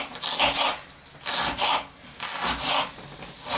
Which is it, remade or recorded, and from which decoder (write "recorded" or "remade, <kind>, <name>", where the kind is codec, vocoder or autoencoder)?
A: recorded